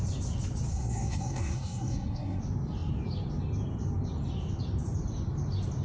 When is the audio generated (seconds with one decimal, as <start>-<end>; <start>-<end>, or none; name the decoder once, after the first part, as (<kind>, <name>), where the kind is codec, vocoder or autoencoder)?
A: 0.7-2.4 (codec, SNAC)